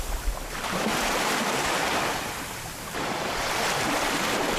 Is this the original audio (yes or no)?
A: no